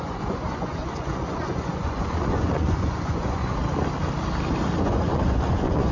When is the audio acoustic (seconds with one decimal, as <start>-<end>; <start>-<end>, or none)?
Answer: 3.6-4.8